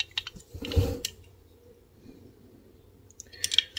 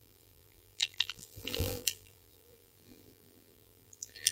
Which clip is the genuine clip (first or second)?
first